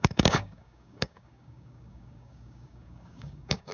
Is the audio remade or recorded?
remade